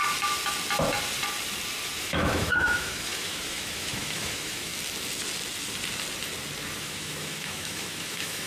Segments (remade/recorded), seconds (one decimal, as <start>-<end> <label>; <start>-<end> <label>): 0.0-2.0 recorded; 2.0-4.7 remade; 4.7-6.8 recorded; 6.8-8.5 remade

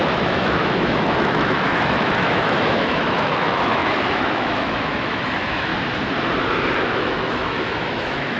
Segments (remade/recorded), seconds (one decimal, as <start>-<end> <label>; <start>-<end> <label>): 0.0-5.7 remade; 5.7-6.8 recorded; 6.8-8.4 remade